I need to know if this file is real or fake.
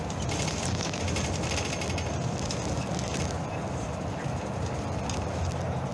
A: fake